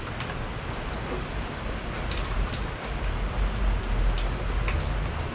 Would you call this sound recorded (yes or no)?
yes